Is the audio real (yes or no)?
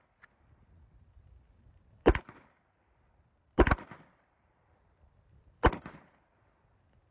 no